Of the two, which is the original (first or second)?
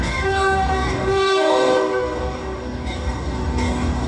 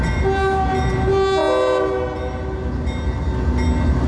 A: second